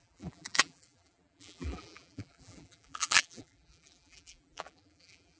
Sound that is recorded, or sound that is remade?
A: remade